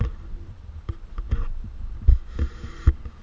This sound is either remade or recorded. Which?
recorded